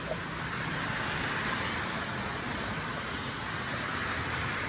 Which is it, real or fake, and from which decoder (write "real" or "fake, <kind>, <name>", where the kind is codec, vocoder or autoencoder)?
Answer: real